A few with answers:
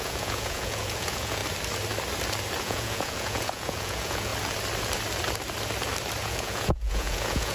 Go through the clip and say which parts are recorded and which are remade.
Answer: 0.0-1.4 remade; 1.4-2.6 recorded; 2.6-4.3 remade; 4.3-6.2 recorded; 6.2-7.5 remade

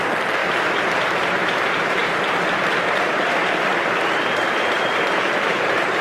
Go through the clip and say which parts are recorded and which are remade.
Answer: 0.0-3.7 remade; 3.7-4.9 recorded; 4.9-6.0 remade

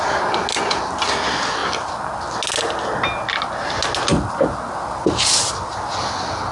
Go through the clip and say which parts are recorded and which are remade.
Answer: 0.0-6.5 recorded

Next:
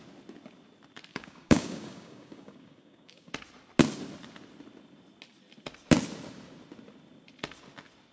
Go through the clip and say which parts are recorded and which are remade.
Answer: 0.0-1.1 recorded; 1.1-3.3 remade; 3.3-8.1 recorded